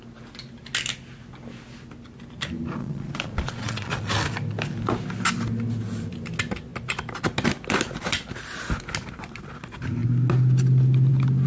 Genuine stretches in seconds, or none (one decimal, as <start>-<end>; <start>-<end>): 0.0-2.8; 4.1-11.5

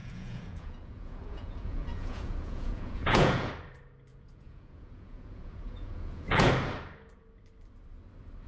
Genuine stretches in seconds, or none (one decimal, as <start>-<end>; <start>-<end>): 3.5-4.1; 6.5-8.5

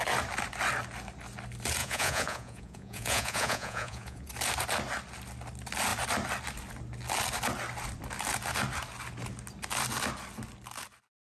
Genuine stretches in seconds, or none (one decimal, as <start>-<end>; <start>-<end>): 0.0-1.8; 4.3-11.2

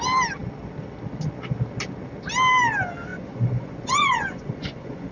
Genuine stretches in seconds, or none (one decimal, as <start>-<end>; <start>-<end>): 0.0-3.1

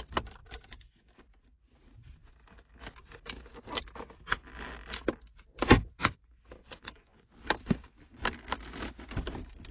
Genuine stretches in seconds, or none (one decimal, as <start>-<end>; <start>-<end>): 0.0-6.6; 7.3-9.7